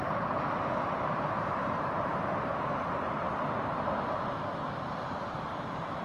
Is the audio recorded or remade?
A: remade